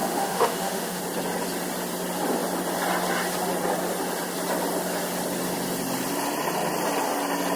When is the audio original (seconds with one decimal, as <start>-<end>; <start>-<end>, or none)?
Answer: 1.0-7.6